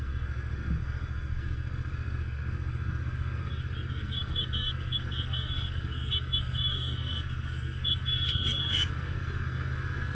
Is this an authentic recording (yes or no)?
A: no